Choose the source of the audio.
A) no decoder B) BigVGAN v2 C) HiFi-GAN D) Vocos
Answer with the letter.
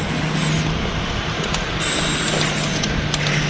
A